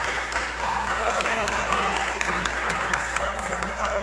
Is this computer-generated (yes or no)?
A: yes